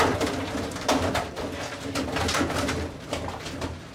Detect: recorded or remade recorded